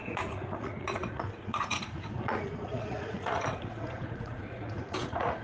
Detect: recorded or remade remade